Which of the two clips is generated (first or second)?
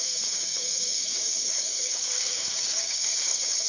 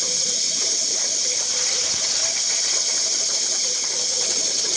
first